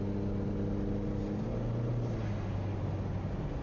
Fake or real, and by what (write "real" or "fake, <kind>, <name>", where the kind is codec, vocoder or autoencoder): real